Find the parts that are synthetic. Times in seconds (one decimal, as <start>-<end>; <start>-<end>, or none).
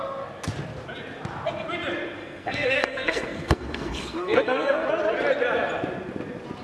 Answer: 2.2-4.9